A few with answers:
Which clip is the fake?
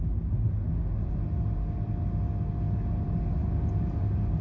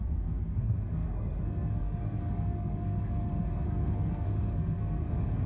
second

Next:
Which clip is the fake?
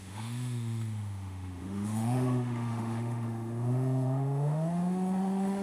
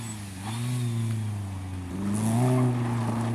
first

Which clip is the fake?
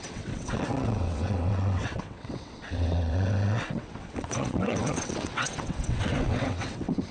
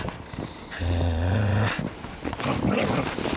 first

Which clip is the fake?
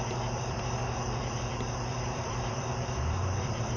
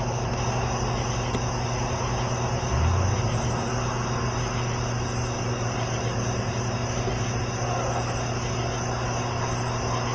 first